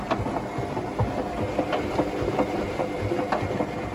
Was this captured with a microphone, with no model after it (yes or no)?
yes